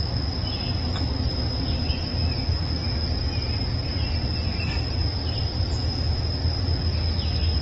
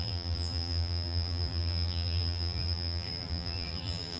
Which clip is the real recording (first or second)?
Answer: first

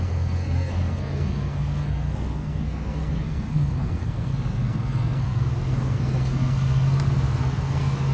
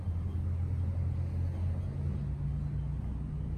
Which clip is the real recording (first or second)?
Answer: second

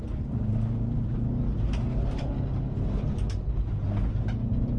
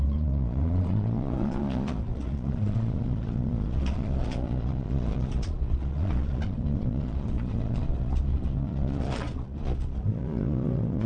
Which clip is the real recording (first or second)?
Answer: first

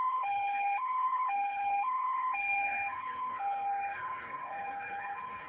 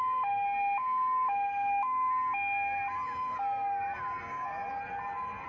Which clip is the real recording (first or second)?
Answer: second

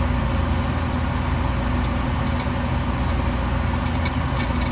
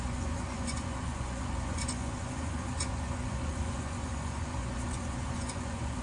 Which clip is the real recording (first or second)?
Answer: first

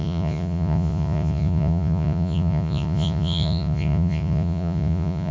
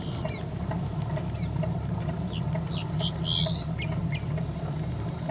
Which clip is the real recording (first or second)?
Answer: second